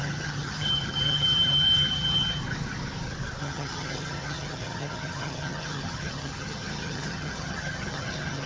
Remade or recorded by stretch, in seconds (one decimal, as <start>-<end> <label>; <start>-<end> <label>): 0.0-2.4 remade; 2.4-3.4 recorded; 3.4-8.5 remade